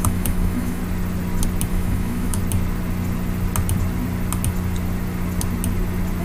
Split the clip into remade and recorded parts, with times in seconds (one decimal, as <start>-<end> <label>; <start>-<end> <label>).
0.0-0.8 remade; 0.8-1.7 recorded; 1.7-2.4 remade; 2.4-6.2 recorded